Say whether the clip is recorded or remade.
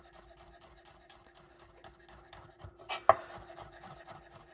recorded